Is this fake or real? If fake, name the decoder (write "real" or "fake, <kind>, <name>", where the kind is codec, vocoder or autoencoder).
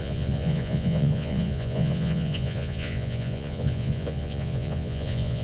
fake, vocoder, Vocos